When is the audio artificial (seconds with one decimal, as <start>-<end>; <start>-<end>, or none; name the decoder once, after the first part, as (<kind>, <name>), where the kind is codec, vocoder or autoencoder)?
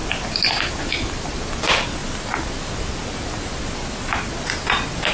none